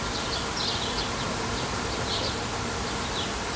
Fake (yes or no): yes